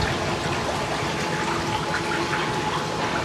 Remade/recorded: recorded